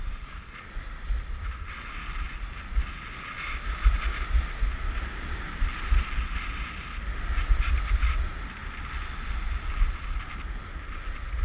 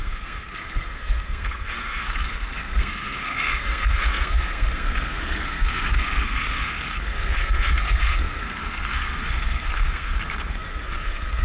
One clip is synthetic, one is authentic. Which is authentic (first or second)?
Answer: first